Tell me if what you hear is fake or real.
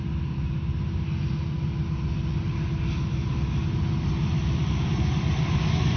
real